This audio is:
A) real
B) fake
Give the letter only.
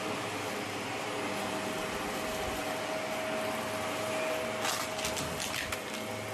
A